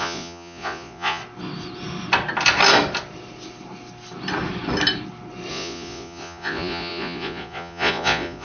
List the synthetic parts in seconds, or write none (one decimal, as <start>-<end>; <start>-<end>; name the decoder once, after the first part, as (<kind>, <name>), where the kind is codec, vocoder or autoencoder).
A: 0.0-1.2 (vocoder, Vocos); 5.5-8.4